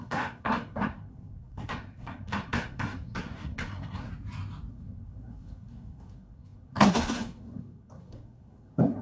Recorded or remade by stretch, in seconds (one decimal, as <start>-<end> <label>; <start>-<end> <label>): 0.0-4.1 remade; 4.1-4.7 recorded; 4.7-9.0 remade